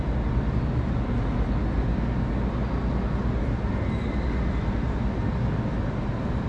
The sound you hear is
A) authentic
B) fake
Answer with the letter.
A